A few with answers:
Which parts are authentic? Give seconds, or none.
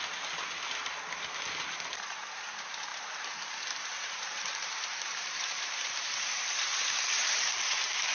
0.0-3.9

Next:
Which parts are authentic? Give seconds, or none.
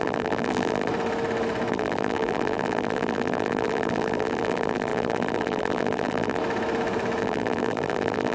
0.9-1.7; 6.4-7.2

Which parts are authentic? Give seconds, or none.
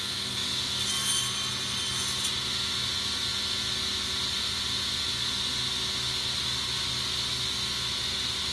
0.0-8.5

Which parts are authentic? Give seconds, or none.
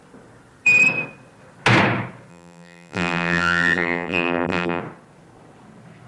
0.0-2.3; 4.8-6.1